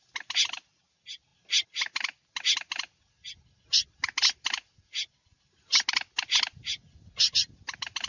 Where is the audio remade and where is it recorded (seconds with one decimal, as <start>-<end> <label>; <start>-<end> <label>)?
0.0-8.1 recorded